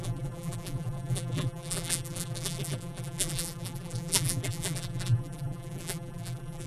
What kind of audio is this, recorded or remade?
remade